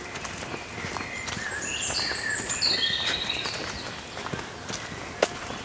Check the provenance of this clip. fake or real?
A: real